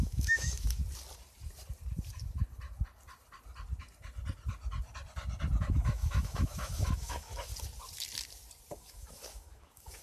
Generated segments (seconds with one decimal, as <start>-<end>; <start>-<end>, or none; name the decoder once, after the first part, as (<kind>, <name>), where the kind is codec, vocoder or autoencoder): 0.0-0.8 (autoencoder, DAC-VAE); 5.6-7.5; 8.7-10.0